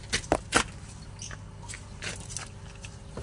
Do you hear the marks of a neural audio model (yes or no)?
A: no